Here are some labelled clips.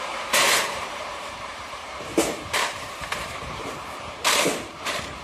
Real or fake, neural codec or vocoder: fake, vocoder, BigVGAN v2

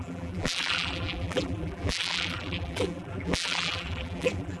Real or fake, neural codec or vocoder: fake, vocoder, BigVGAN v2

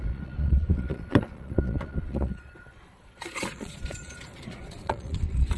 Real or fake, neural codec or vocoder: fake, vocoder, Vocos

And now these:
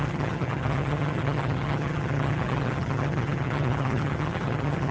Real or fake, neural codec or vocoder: fake, vocoder, HiFi-GAN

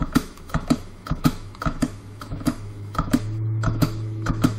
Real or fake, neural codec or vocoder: fake, autoencoder, DAC-VAE